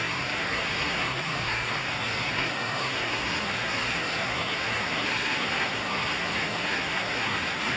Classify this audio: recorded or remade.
remade